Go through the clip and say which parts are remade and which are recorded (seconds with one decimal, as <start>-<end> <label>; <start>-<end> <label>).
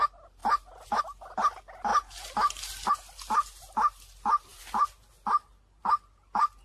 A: 0.0-6.6 recorded